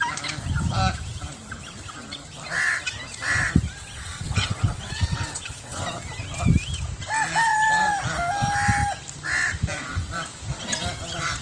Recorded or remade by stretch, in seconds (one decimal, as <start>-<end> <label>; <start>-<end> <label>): 0.0-3.8 recorded; 3.8-5.8 remade; 5.8-11.4 recorded